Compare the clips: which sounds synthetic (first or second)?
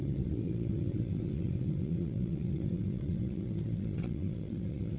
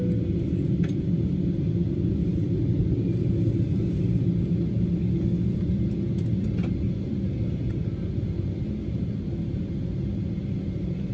first